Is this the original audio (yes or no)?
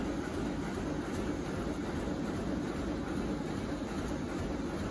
yes